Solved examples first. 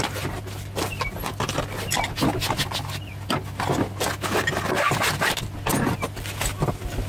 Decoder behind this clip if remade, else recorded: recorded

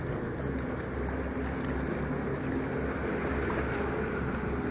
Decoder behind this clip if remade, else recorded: recorded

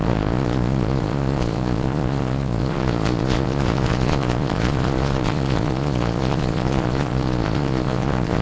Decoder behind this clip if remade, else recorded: remade, vocoder, Vocos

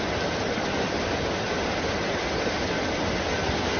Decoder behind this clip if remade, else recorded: recorded